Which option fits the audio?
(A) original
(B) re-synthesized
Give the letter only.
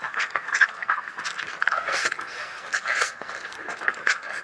B